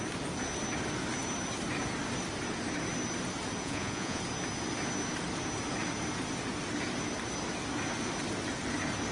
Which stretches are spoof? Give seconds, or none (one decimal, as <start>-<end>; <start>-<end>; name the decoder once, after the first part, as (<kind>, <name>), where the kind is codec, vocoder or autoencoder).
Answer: 3.6-4.2 (vocoder, Vocos)